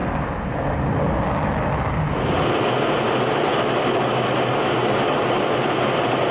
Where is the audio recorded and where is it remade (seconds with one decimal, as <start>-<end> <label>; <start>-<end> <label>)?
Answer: 0.0-6.3 recorded